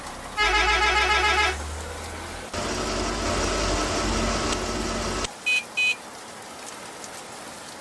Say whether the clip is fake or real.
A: real